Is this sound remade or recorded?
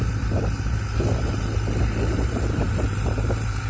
remade